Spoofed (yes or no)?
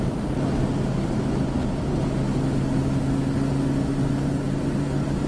no